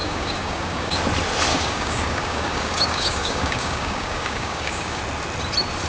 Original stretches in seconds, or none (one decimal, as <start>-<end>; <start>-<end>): 1.0-1.5; 5.0-5.9